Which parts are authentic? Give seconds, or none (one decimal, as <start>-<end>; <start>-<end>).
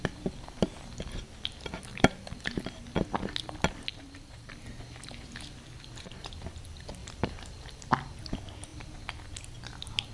0.0-1.9; 2.6-3.9; 4.5-7.0; 7.9-10.1